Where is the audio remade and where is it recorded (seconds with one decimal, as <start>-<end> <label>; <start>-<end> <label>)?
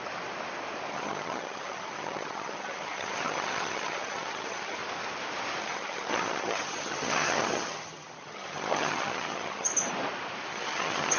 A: 0.0-0.9 recorded; 0.9-4.8 remade; 4.8-5.6 recorded; 5.6-9.7 remade; 9.7-10.5 recorded; 10.5-11.2 remade